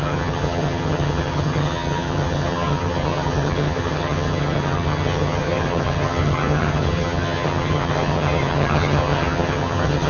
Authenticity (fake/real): fake